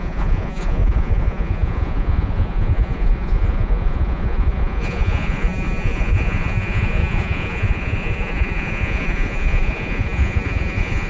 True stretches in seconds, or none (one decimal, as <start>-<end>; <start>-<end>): none

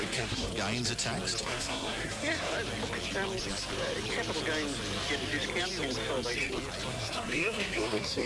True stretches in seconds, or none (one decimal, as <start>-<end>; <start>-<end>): 0.5-1.4; 2.5-6.9